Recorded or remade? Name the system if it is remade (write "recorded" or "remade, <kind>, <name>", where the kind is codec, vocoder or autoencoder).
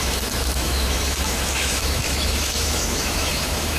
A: remade, autoencoder, DAC-VAE